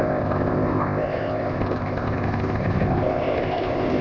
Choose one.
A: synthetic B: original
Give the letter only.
A